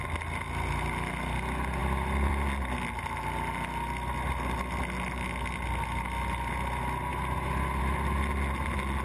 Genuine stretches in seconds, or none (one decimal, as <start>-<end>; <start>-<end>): 0.0-1.8; 2.3-9.0